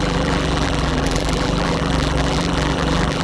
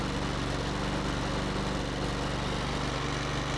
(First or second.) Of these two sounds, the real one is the second